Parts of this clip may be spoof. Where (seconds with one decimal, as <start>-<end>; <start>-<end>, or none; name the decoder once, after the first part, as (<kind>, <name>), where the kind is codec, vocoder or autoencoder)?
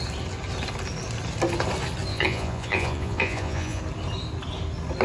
2.1-3.8 (vocoder, Vocos)